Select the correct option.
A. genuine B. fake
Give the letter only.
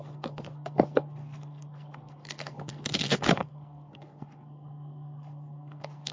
B